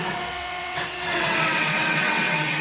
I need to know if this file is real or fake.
fake